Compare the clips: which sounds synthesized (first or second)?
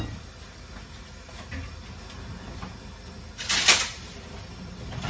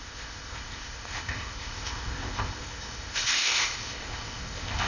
second